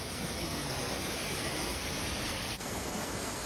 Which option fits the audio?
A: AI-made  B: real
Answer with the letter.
A